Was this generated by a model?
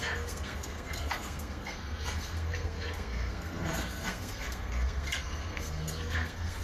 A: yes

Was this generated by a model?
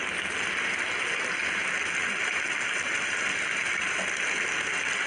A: no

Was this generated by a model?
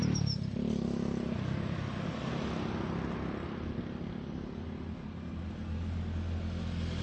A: no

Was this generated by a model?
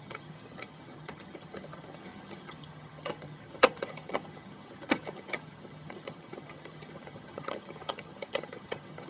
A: yes